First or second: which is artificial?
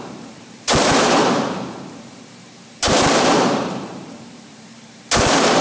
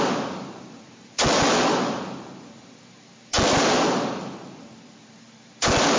first